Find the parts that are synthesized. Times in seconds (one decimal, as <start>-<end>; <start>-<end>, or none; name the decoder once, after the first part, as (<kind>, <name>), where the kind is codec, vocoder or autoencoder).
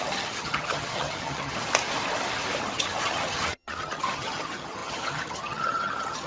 0.0-1.6 (vocoder, HiFi-GAN); 2.6-6.3